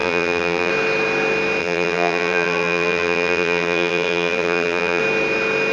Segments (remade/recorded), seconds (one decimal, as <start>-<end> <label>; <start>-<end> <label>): 0.0-0.7 remade; 0.7-1.6 recorded; 1.6-5.0 remade; 5.0-5.7 recorded